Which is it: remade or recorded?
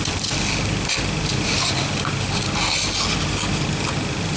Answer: recorded